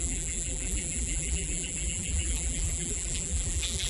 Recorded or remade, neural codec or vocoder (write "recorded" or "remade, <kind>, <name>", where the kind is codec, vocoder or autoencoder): remade, vocoder, BigVGAN v2